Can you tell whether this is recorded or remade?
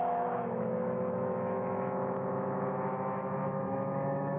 remade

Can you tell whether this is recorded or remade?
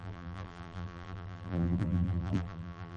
remade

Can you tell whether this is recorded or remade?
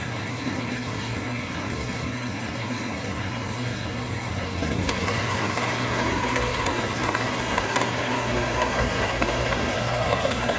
remade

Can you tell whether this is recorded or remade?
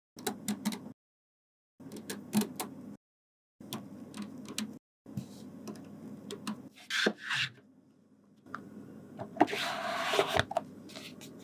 recorded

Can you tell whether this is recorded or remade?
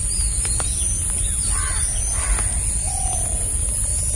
recorded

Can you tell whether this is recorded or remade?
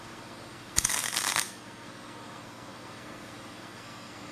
remade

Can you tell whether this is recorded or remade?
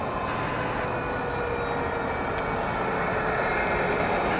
recorded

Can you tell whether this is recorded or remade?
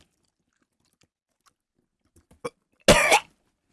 recorded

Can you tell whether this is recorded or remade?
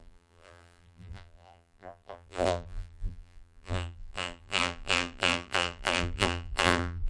remade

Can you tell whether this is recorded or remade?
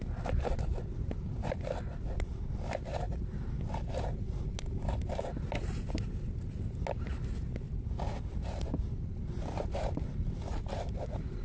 recorded